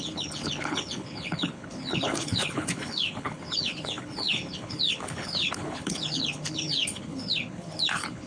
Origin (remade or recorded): remade